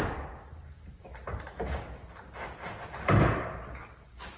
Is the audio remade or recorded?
recorded